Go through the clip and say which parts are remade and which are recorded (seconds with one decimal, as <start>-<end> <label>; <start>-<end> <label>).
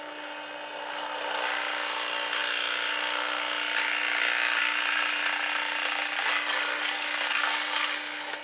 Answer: 0.0-8.4 recorded